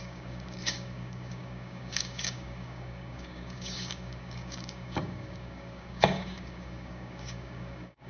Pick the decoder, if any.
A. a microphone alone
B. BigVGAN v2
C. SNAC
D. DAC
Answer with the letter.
D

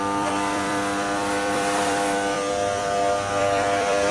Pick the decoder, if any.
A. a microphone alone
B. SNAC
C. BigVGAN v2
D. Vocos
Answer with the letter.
C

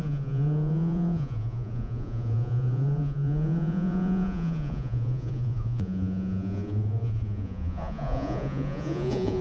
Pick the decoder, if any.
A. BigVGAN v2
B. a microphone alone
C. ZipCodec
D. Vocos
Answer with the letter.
D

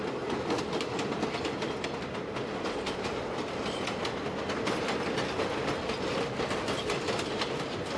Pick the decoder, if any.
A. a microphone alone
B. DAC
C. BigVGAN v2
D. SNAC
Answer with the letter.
A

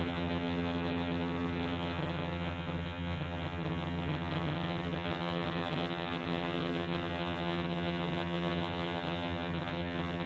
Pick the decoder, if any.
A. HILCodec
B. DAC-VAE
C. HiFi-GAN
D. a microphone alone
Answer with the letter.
C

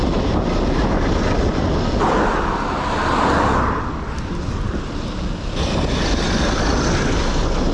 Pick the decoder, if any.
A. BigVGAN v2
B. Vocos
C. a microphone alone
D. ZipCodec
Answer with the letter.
C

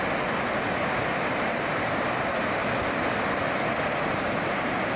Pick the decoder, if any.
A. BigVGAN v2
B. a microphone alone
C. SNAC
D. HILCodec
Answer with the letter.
B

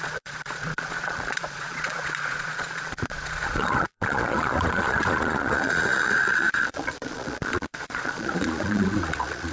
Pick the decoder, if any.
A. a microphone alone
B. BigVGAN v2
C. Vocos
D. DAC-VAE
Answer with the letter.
C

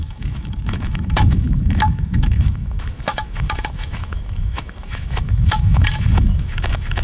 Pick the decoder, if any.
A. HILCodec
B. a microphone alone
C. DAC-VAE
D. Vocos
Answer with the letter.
C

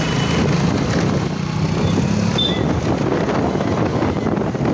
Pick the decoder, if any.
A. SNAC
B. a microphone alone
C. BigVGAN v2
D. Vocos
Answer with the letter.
B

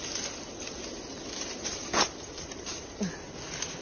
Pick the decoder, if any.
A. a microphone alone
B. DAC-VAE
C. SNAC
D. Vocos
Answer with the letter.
A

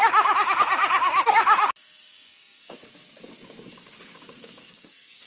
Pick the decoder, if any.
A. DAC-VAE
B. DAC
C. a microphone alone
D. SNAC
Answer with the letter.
B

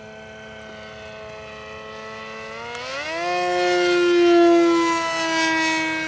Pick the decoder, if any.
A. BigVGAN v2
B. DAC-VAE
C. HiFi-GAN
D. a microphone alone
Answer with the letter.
D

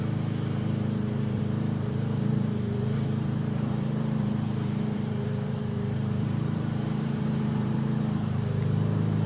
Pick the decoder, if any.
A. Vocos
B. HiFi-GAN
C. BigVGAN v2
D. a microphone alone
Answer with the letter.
C